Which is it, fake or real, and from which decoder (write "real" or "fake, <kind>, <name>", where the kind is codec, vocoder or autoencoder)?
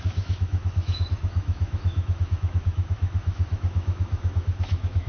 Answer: fake, autoencoder, DAC-VAE